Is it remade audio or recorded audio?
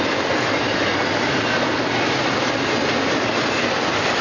recorded